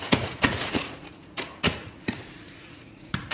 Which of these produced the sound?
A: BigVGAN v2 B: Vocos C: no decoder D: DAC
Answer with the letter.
B